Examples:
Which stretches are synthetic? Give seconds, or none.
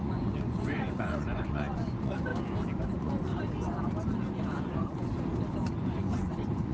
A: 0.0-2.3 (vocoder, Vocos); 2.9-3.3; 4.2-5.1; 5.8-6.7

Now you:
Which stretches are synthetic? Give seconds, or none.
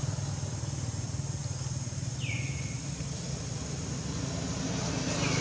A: 1.4-4.0 (vocoder, BigVGAN v2)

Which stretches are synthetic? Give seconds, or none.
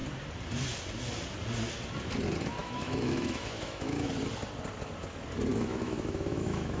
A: 2.6-4.1 (autoencoder, DAC-VAE); 5.5-6.8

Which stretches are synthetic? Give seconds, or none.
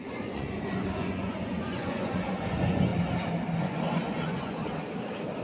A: 0.0-2.9 (vocoder, Vocos); 3.6-4.6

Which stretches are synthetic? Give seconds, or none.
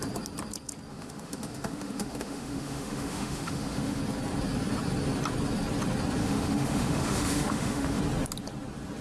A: 0.9-4.0 (autoencoder, DAC-VAE); 6.2-8.0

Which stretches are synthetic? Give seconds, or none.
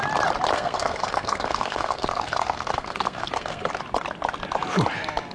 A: 0.5-3.7 (codec, SNAC)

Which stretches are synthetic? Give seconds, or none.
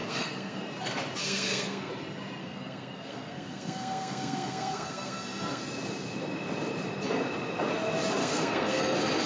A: 0.0-0.6 (codec, SNAC); 1.2-1.9; 2.4-5.6; 8.2-8.8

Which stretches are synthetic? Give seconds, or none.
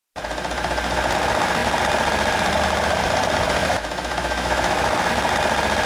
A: 3.6-5.1 (autoencoder, DAC-VAE)